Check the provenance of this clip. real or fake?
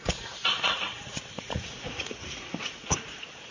fake